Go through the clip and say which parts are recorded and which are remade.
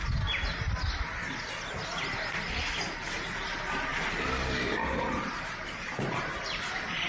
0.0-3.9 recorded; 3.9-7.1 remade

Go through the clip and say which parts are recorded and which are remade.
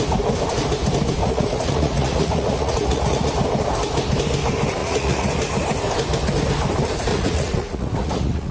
0.0-1.2 recorded; 1.2-3.3 remade; 3.3-4.8 recorded; 4.8-5.3 remade; 5.3-7.1 recorded; 7.1-8.5 remade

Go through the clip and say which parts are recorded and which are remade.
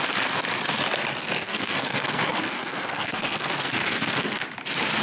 0.0-1.4 recorded; 1.4-4.4 remade; 4.4-5.0 recorded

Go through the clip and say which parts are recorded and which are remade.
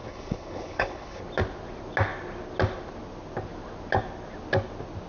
0.0-1.2 remade; 1.2-5.1 recorded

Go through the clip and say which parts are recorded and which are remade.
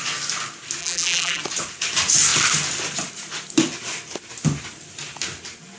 0.0-0.8 recorded; 0.8-1.4 remade; 1.4-5.8 recorded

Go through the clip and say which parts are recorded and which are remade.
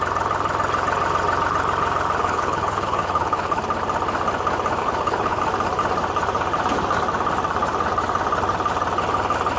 0.0-2.2 recorded; 2.2-3.6 remade; 3.6-4.8 recorded; 4.8-5.4 remade; 5.4-9.6 recorded